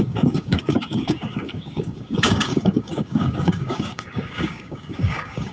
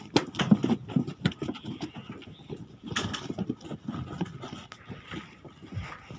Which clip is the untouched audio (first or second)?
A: second